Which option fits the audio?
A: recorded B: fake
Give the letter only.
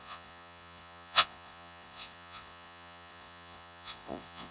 B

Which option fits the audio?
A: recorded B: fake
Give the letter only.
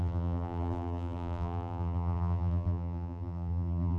B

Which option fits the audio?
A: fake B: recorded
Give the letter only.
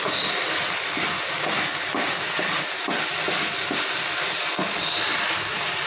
B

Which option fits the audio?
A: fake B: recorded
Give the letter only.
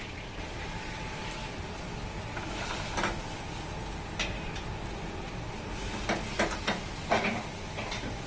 B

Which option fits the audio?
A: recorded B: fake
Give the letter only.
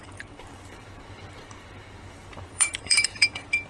B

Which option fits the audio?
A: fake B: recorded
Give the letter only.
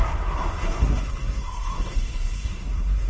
A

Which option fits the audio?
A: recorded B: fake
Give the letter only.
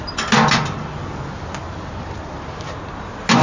A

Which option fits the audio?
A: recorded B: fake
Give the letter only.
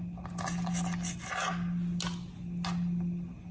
A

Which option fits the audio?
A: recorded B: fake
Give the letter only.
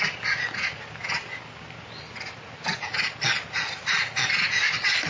A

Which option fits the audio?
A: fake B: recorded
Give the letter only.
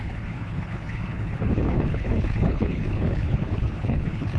A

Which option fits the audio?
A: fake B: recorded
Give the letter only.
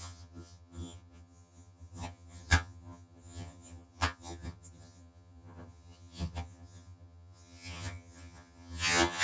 A